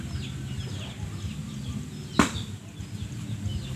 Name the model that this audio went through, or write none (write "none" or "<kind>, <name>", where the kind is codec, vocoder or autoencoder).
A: none